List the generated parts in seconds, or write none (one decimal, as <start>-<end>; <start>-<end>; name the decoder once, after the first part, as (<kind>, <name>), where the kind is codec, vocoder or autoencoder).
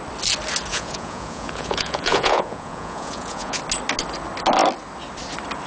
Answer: 0.7-3.6 (vocoder, Vocos)